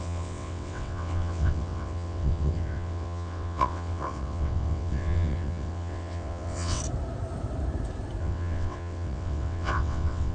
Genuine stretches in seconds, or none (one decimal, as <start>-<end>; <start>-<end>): 6.8-8.2